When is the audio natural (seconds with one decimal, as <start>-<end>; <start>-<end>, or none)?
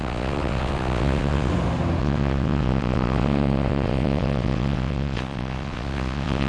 1.5-2.0